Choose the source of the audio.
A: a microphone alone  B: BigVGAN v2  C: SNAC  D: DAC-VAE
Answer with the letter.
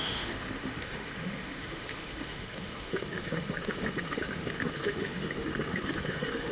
D